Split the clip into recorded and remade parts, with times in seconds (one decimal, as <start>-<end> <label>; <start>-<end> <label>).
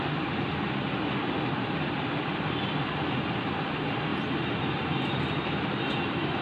0.0-6.4 recorded